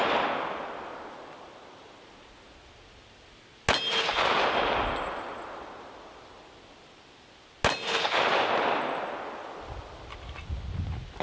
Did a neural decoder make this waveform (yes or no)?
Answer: no